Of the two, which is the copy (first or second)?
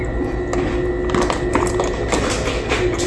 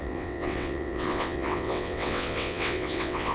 second